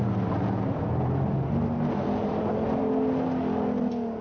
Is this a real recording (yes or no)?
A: yes